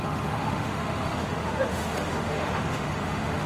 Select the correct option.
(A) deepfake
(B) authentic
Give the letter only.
A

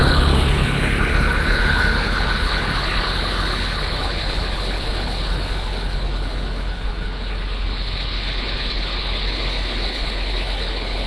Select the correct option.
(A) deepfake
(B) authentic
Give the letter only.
A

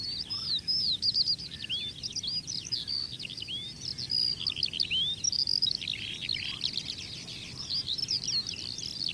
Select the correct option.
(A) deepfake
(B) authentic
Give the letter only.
B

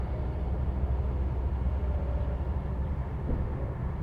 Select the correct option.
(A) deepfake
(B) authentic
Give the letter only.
B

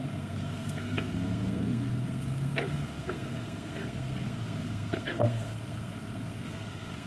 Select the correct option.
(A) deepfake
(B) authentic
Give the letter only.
A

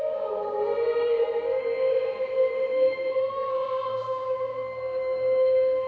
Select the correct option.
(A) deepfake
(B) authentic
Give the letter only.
A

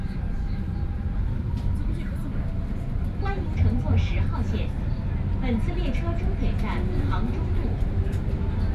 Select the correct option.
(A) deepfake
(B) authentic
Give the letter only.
B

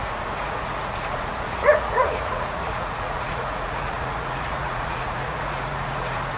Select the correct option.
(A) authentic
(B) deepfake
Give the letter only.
B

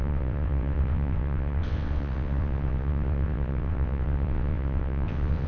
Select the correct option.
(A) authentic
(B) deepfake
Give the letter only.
B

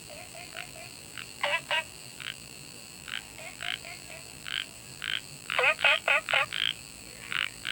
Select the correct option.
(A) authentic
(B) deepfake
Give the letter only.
B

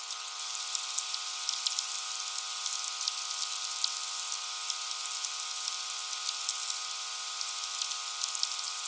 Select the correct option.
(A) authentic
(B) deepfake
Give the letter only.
A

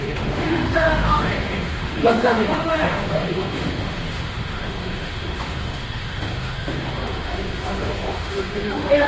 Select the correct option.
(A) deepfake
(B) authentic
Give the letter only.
A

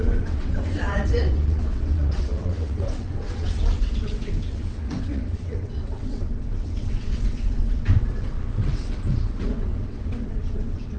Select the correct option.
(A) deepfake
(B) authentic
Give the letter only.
A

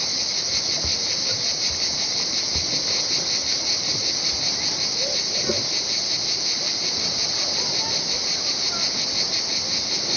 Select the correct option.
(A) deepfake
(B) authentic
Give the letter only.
B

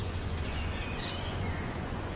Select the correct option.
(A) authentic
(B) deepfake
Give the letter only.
B